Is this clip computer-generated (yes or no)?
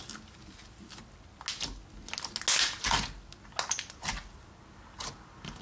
no